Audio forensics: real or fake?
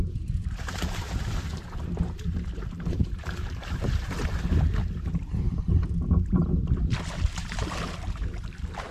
fake